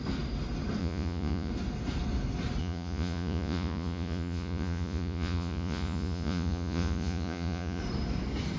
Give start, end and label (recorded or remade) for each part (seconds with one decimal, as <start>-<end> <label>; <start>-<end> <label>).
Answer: 0.0-0.8 recorded; 0.8-1.5 remade; 1.5-2.6 recorded; 2.6-7.8 remade; 7.8-8.6 recorded